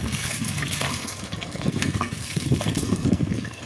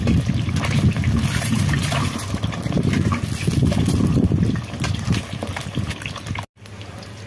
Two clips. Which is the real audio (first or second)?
second